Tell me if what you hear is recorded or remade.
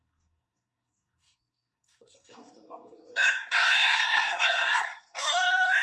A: remade